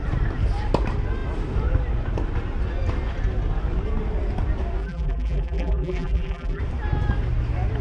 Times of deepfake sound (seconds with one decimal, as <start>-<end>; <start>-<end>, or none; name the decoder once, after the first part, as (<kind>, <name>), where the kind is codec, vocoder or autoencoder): 4.8-6.6 (vocoder, BigVGAN v2)